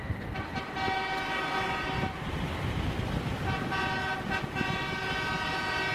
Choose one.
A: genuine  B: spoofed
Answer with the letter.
A